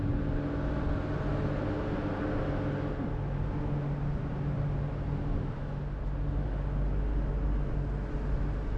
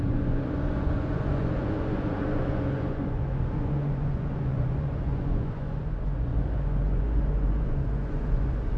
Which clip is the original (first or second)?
first